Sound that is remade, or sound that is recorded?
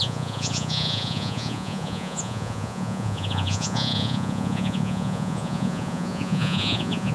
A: remade